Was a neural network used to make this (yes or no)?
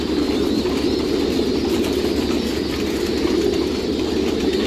no